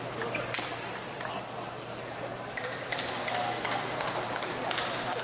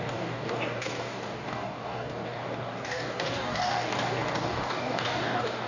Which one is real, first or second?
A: first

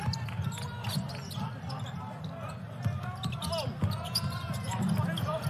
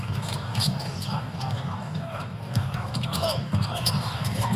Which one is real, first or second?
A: first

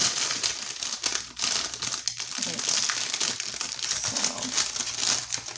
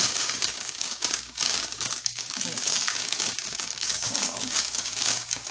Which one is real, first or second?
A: first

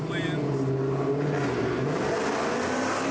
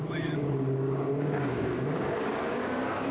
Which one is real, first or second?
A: first